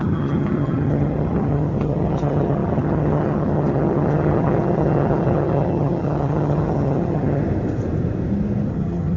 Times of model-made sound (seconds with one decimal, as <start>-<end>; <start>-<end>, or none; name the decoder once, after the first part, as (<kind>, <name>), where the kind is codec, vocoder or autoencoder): 0.0-7.4 (vocoder, HiFi-GAN); 8.7-9.2